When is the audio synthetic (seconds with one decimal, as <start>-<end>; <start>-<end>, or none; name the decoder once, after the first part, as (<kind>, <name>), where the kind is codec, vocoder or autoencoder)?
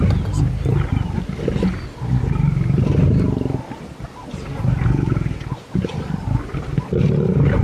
none